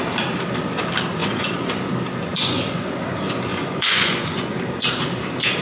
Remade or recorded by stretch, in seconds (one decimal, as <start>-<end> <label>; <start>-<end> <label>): 0.0-1.2 recorded; 1.2-1.7 remade; 1.7-2.3 recorded; 2.3-2.9 remade; 2.9-3.5 recorded; 3.5-4.6 remade; 4.6-5.6 recorded